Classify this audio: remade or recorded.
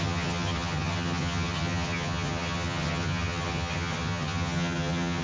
remade